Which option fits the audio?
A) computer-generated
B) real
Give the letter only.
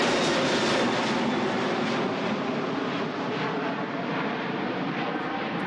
B